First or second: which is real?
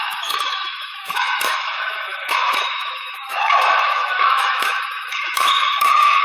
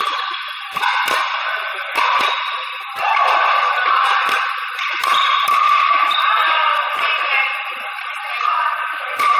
second